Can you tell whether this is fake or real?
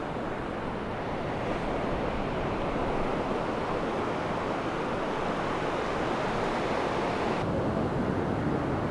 real